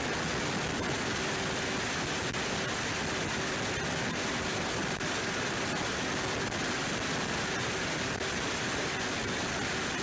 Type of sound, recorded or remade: recorded